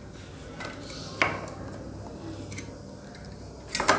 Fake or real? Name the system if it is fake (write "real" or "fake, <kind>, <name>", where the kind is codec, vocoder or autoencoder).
real